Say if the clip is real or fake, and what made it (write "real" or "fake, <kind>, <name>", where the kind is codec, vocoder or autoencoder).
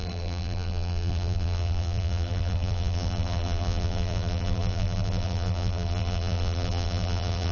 fake, vocoder, BigVGAN v2